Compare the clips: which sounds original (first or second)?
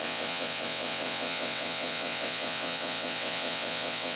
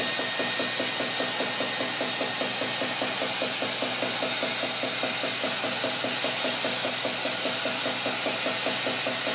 second